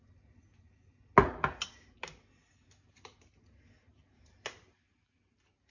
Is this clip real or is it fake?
real